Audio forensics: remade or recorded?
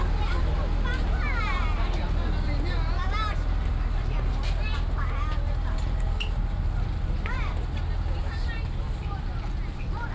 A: recorded